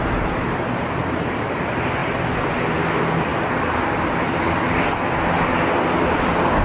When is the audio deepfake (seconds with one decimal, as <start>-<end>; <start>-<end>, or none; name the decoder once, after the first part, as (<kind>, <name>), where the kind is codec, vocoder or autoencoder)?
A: none